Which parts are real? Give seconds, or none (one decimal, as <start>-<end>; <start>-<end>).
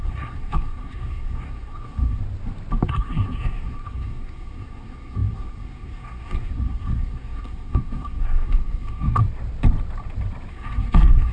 2.2-2.9; 9.2-10.5